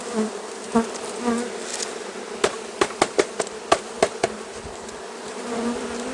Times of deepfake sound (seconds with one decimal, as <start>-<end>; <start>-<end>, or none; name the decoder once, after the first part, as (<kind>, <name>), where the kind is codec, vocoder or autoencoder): none